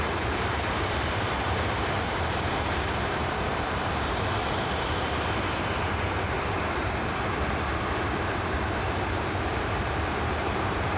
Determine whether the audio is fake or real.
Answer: fake